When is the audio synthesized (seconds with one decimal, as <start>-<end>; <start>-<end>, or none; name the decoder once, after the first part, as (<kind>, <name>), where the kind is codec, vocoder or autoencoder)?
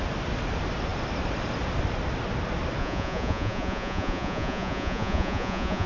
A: 2.8-5.9 (vocoder, Vocos)